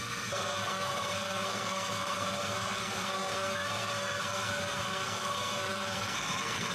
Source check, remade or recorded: remade